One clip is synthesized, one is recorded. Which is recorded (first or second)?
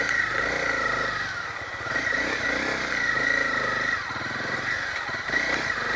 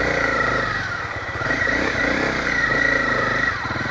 first